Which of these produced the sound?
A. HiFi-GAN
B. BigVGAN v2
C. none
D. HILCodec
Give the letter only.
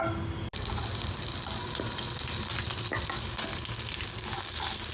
C